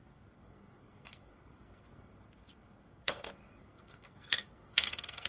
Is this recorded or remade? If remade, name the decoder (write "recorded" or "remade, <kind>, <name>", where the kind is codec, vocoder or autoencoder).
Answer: remade, codec, SNAC